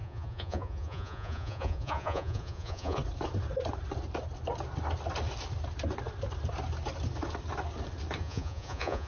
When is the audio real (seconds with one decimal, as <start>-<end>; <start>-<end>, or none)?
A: 3.0-8.2